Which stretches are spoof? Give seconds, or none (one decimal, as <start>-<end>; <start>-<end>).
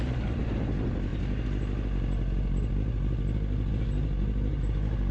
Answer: none